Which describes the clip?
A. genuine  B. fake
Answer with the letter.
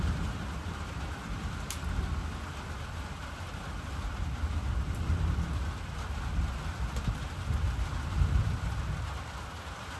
A